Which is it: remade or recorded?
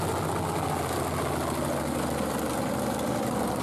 recorded